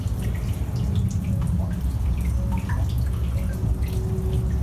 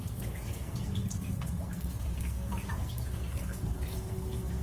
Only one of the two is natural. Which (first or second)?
first